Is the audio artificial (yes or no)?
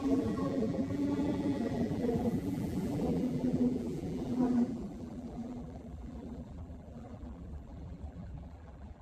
yes